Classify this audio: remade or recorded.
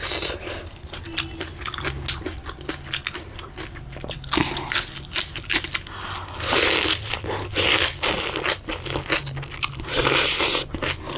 recorded